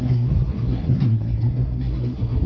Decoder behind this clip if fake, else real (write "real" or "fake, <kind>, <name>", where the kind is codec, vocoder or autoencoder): fake, codec, SNAC